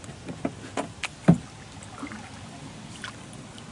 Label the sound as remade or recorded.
recorded